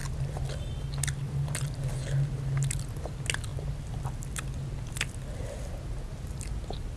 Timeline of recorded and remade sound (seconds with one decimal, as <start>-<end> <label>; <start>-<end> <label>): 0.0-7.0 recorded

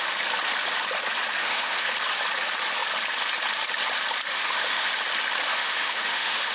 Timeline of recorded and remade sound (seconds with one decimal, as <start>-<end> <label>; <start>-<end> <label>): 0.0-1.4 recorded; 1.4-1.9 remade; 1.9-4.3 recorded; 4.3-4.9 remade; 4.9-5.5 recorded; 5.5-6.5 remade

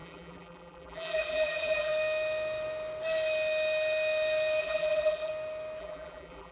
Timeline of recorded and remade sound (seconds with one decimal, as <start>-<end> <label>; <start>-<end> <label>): 0.0-1.9 remade; 1.9-4.6 recorded; 4.6-5.3 remade; 5.3-5.8 recorded; 5.8-6.5 remade